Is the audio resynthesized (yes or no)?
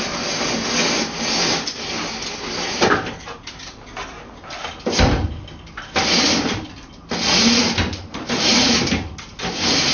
no